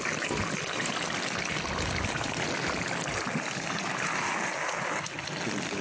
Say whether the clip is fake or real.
real